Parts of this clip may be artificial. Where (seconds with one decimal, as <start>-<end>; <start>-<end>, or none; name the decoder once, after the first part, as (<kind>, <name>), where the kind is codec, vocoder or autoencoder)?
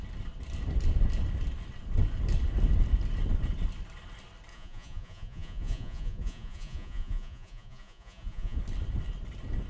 4.5-8.6 (vocoder, Vocos)